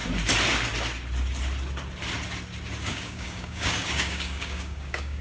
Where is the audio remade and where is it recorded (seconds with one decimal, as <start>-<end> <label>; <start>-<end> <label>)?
0.0-2.8 recorded; 2.8-5.2 remade